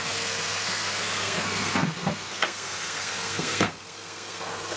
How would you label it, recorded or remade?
remade